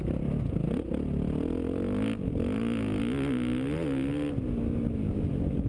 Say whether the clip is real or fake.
real